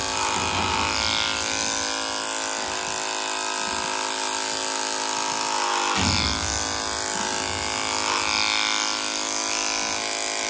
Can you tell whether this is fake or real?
real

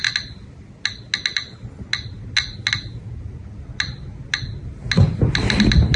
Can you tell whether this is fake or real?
real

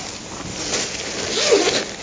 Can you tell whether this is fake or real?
real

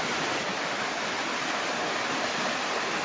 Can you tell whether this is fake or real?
real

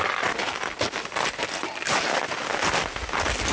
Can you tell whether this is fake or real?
real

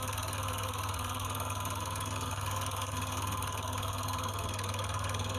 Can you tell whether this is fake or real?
fake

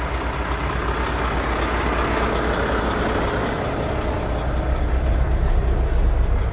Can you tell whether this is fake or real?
real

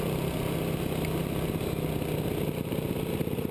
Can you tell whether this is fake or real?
real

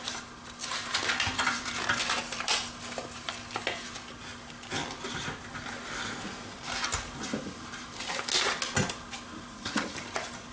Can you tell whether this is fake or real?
real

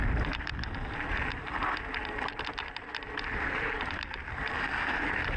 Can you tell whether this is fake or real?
real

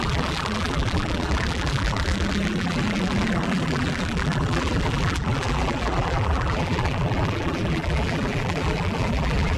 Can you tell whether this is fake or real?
fake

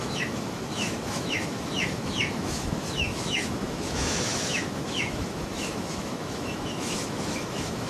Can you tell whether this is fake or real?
fake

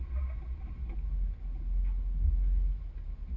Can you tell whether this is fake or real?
real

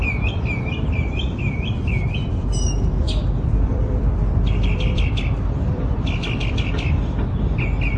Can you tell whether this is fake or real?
fake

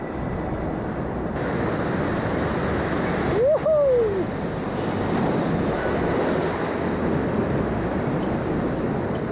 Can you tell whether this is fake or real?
real